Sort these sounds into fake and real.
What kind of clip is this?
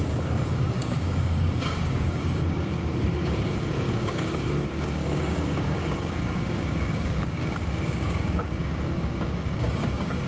fake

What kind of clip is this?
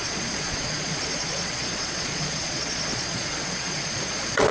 fake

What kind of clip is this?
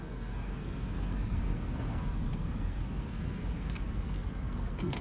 fake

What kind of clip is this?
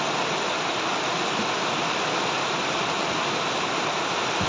real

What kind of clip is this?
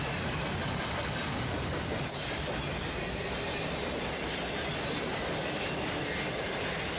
real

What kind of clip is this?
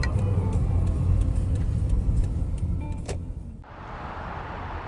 fake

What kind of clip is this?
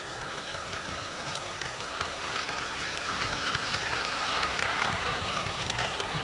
fake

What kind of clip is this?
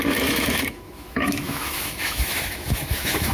fake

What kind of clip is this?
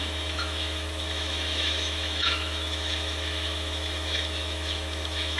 fake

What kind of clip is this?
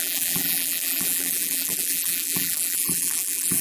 fake